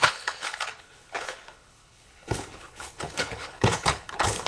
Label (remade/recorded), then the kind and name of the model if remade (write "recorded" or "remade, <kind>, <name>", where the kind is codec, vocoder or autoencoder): remade, codec, HILCodec